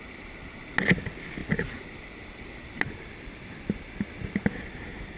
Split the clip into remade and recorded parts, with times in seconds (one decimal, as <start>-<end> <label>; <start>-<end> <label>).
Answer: 0.0-1.4 recorded; 1.4-3.9 remade; 3.9-5.2 recorded